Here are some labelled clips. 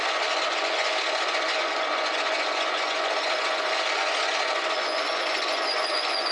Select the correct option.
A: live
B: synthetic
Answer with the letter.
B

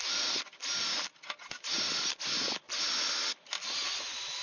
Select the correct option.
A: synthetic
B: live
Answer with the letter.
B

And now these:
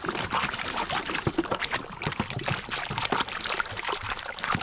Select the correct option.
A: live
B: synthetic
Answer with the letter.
A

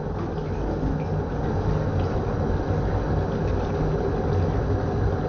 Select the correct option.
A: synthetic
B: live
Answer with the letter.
B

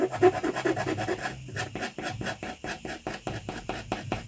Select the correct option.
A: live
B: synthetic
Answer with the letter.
A